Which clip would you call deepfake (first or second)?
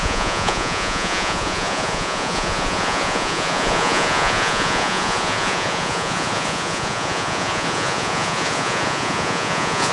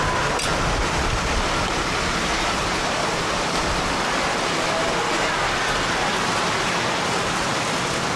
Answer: first